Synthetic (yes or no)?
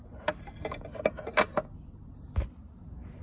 no